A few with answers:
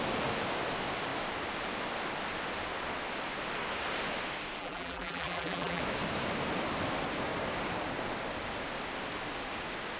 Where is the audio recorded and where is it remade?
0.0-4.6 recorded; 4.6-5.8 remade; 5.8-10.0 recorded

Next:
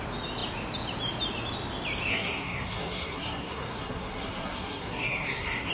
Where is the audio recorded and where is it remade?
0.0-2.1 recorded; 2.1-5.7 remade

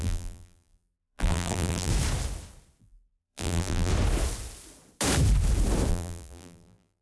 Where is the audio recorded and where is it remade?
0.0-1.9 remade; 1.9-2.8 recorded; 2.8-3.9 remade; 3.9-5.9 recorded; 5.9-7.0 remade

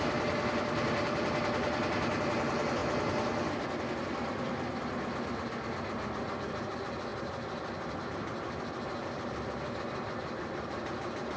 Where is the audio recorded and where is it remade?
0.0-11.4 recorded

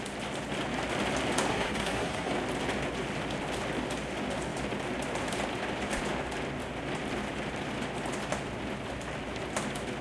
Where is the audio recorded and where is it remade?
0.0-1.5 recorded; 1.5-2.3 remade; 2.3-10.0 recorded

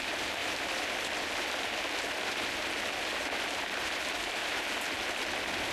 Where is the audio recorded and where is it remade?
0.0-0.4 remade; 0.4-3.8 recorded; 3.8-4.4 remade; 4.4-5.7 recorded

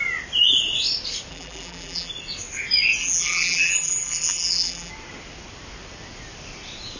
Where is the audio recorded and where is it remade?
0.0-1.3 recorded; 1.3-2.1 remade; 2.1-3.0 recorded; 3.0-4.9 remade; 4.9-7.0 recorded

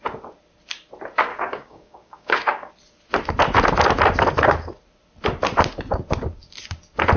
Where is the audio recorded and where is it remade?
0.0-1.3 recorded; 1.3-2.7 remade; 2.7-7.2 recorded